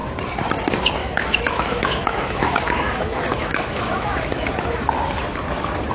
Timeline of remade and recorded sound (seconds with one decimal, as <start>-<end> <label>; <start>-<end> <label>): 0.0-1.0 recorded; 1.0-4.5 remade; 4.5-5.9 recorded